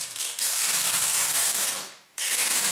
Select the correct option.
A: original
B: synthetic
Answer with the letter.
B